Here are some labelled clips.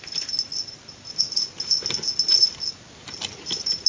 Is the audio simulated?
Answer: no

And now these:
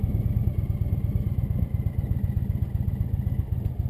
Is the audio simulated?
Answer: no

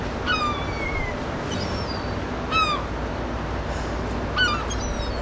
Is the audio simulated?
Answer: no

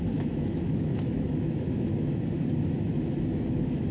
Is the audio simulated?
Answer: yes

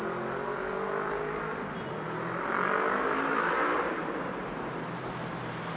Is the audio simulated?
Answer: no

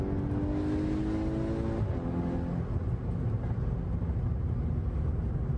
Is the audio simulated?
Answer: no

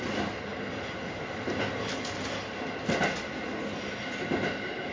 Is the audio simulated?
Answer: no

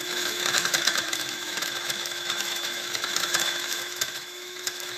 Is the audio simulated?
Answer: yes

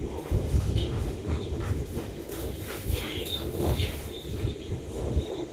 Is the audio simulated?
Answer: yes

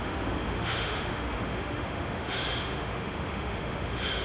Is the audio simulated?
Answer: yes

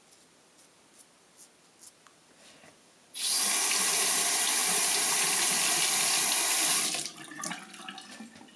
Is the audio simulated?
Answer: no